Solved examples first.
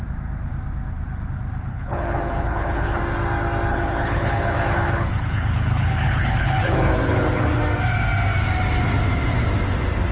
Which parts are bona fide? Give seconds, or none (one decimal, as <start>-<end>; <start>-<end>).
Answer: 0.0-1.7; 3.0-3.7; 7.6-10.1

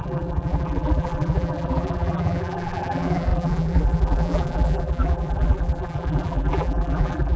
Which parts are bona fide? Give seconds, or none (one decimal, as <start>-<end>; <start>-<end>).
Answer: none

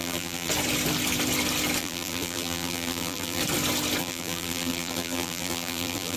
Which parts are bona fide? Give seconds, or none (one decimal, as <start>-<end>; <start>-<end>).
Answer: 0.5-1.8; 3.4-4.0